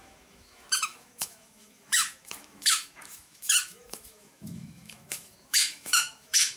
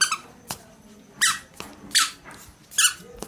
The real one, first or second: second